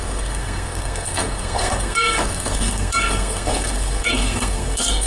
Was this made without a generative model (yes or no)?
no